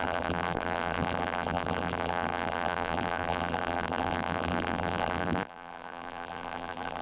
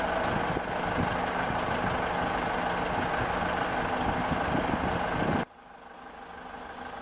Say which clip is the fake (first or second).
first